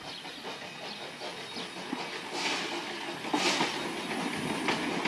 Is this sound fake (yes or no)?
no